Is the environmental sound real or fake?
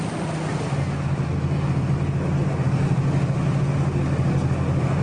real